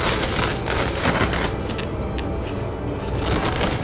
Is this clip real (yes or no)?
yes